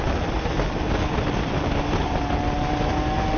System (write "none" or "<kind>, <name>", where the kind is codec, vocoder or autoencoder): none